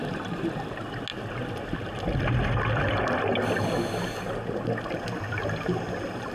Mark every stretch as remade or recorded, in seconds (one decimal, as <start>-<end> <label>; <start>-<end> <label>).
0.0-6.3 recorded